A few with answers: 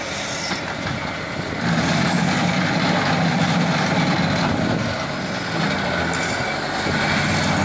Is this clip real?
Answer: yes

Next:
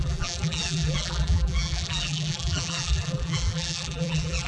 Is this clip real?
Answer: no